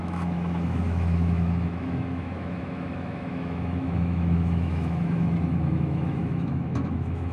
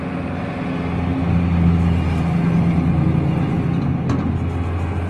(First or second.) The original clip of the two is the second